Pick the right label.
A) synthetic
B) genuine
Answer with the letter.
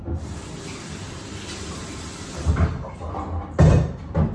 B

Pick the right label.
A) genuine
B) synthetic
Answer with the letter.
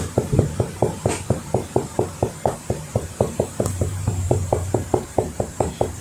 B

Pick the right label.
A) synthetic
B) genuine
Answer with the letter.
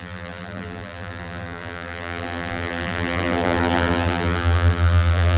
A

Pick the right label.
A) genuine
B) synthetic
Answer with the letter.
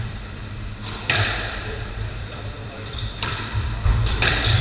B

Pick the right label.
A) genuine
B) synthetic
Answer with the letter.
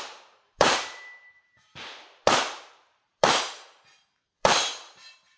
B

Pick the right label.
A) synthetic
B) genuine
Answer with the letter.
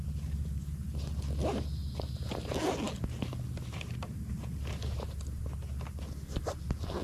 B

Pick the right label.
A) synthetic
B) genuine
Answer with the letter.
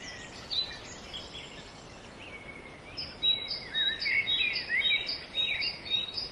B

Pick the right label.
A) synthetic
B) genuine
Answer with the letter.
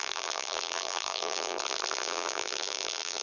A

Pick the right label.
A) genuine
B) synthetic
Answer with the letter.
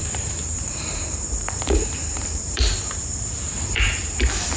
B